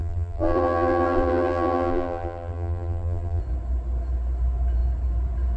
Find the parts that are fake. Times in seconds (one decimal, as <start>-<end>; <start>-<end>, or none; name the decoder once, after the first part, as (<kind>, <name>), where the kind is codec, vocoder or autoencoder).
0.0-3.4 (vocoder, BigVGAN v2)